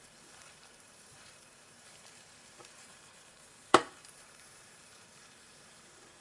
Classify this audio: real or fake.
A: fake